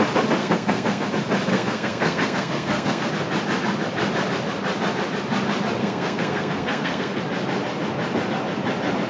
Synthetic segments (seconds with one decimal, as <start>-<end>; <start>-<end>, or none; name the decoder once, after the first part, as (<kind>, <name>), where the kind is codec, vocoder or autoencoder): 0.4-1.1 (codec, SNAC); 1.5-3.1; 5.8-7.2